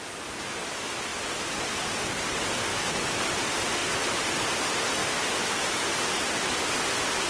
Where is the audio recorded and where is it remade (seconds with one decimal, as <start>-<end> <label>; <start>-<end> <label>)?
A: 0.0-2.7 recorded; 2.7-3.2 remade; 3.2-5.0 recorded; 5.0-5.9 remade; 5.9-7.3 recorded